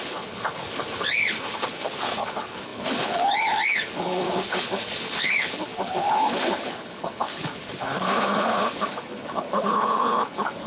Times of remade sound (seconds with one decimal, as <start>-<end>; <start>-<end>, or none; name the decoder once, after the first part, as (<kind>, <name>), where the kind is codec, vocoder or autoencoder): 0.0-10.7 (codec, HILCodec)

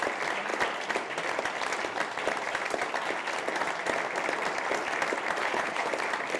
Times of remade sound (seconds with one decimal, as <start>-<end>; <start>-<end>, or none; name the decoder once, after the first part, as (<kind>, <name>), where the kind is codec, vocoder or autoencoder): 5.4-5.9 (codec, HILCodec)

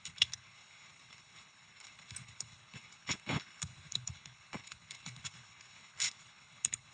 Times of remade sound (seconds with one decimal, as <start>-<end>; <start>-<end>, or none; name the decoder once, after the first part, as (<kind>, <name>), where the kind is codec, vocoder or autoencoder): 0.0-6.9 (codec, HILCodec)

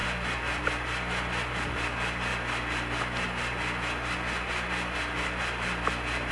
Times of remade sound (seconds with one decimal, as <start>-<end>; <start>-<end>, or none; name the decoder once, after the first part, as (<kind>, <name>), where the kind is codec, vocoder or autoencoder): none

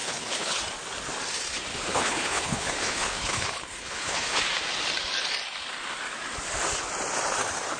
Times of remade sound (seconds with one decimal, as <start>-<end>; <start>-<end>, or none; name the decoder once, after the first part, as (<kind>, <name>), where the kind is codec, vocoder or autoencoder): 0.0-0.6 (codec, HILCodec); 1.7-4.4